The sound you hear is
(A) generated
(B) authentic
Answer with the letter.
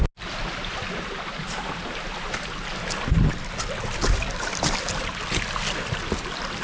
B